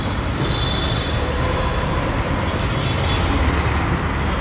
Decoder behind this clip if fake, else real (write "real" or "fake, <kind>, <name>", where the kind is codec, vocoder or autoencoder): real